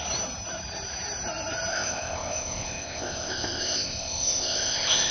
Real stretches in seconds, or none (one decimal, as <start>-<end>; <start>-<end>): 0.0-1.7